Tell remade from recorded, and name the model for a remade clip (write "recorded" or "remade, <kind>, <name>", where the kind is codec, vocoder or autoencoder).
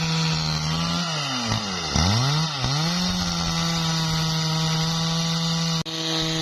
recorded